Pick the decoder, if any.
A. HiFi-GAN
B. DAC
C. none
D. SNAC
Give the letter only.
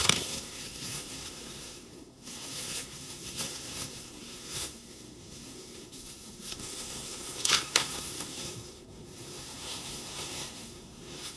D